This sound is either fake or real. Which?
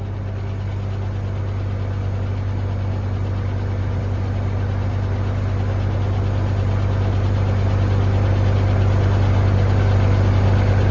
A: real